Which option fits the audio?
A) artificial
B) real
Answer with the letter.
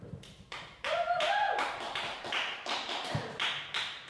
A